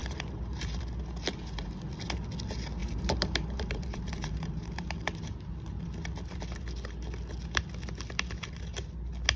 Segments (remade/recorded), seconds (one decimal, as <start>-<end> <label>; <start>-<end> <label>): 0.0-0.8 remade; 0.8-2.8 recorded; 2.8-5.6 remade; 5.6-9.4 recorded